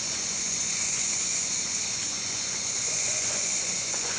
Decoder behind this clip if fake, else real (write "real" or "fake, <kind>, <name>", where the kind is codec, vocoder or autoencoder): fake, vocoder, Vocos